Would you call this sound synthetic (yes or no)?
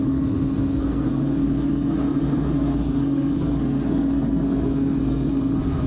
yes